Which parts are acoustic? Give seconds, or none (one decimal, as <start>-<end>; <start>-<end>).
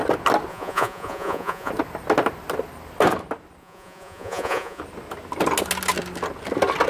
0.0-0.5; 1.7-3.6; 4.8-6.9